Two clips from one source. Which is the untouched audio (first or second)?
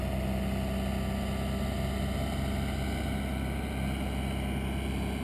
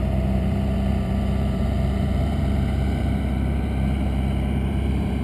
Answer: first